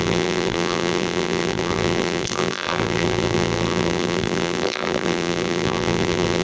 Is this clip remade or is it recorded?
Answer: remade